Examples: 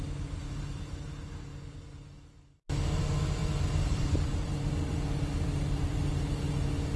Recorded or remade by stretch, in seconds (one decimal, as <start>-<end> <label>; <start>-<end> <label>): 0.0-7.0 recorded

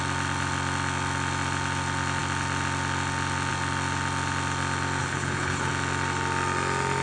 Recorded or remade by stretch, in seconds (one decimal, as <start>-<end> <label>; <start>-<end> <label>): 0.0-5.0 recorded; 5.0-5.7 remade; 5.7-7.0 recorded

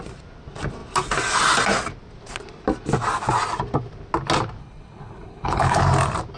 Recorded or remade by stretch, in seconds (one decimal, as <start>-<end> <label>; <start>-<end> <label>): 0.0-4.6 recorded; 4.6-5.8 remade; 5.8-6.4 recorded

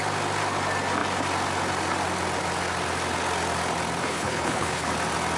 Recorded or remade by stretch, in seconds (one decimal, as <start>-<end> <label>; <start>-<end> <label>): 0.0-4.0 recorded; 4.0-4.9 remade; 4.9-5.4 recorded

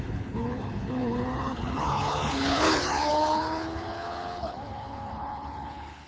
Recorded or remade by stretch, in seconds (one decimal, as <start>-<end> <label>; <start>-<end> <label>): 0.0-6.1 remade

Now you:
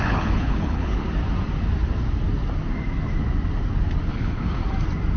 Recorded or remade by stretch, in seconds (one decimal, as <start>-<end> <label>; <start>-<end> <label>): 0.0-1.0 remade; 1.0-4.1 recorded; 4.1-4.6 remade; 4.6-5.2 recorded